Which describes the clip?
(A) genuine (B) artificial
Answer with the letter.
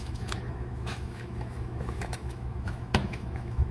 B